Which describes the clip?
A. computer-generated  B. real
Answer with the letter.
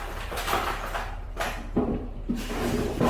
A